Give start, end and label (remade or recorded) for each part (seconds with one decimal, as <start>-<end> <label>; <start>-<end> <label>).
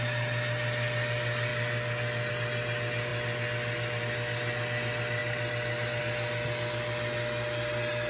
0.0-8.1 recorded